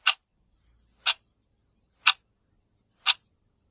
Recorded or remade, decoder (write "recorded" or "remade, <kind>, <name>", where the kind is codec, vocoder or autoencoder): recorded